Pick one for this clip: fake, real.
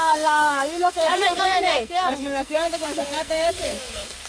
fake